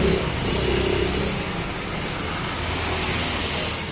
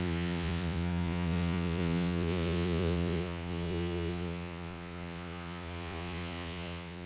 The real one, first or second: first